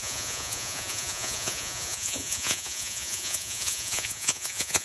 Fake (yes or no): yes